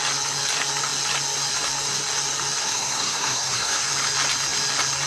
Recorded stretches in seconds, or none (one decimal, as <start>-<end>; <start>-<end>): 0.0-2.6; 3.9-5.1